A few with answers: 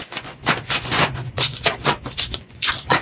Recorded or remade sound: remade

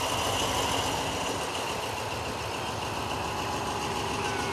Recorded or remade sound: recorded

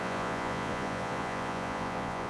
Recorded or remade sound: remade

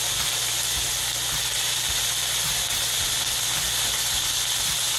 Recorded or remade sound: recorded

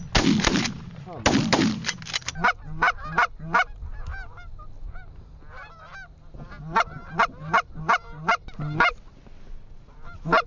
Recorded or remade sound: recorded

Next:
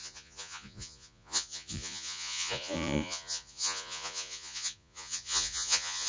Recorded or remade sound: remade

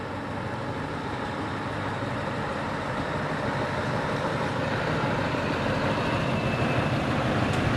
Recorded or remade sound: recorded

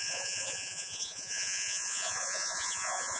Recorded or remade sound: remade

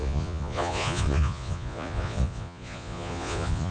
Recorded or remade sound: remade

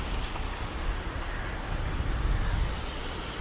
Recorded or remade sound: recorded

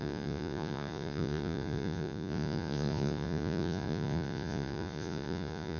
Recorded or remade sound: remade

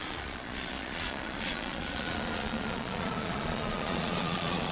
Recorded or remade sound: remade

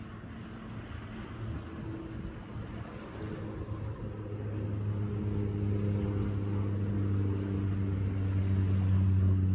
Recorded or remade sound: recorded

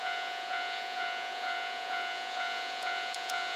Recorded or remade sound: remade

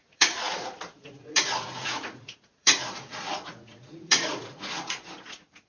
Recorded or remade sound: remade